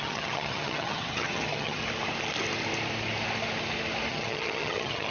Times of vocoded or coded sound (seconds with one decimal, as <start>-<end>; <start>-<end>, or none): 0.0-1.8; 4.1-5.1